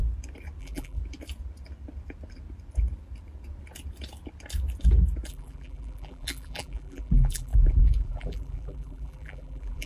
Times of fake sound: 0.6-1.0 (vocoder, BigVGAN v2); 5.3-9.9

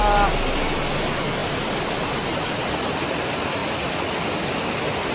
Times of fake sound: none

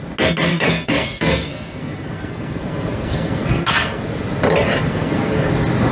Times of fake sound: 0.5-4.0 (codec, SNAC); 4.9-5.5

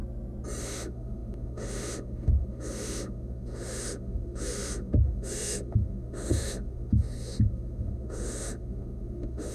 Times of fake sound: 0.6-9.5 (autoencoder, DAC-VAE)